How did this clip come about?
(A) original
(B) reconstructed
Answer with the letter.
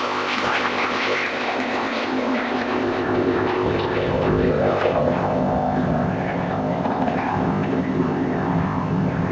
B